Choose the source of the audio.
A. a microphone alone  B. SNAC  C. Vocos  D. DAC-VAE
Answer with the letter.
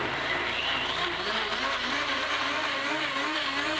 A